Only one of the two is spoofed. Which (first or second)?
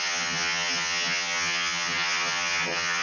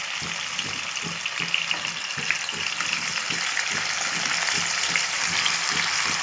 first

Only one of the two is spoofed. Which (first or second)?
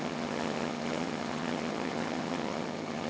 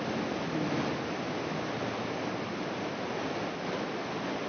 first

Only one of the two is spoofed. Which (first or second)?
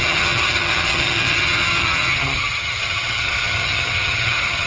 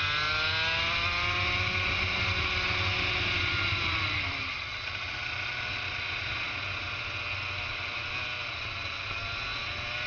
first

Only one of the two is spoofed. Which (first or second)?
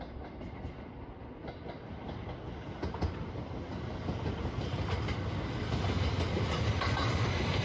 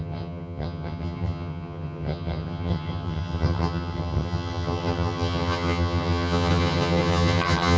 second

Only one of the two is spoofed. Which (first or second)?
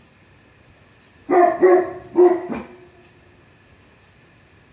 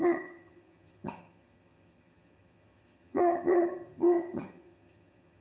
second